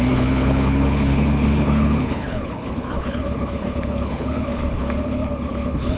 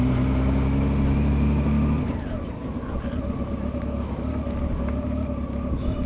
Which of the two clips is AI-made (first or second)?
first